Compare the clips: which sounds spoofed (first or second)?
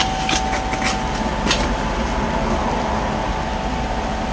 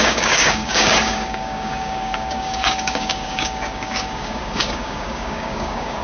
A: second